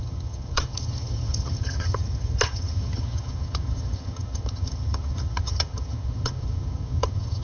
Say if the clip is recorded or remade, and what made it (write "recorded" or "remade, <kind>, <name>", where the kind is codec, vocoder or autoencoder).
remade, vocoder, HiFi-GAN